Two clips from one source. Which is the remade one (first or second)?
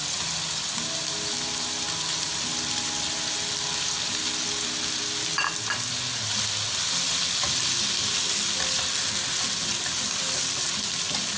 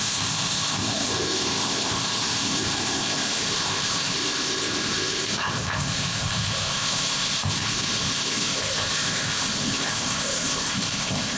second